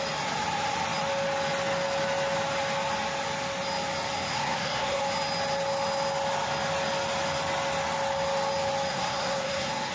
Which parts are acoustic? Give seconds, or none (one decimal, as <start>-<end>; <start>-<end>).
0.0-4.3; 5.0-8.9